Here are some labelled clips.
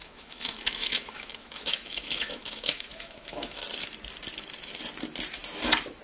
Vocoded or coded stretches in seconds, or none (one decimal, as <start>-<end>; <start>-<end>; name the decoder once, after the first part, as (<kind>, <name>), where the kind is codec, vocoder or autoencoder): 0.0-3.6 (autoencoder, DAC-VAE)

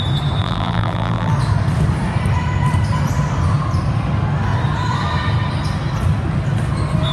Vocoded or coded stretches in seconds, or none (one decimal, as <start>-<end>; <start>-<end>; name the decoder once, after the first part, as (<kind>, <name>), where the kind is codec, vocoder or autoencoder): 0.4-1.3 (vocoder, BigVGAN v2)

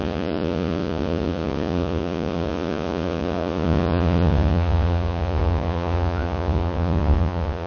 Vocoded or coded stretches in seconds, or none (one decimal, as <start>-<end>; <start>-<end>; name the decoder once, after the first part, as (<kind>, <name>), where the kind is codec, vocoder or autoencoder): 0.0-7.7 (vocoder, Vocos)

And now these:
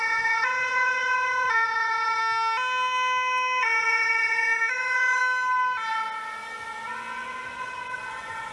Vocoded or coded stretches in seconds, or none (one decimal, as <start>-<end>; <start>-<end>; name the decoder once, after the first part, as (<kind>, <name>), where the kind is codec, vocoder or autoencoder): 0.0-2.2 (vocoder, Vocos); 3.6-5.2; 7.6-8.5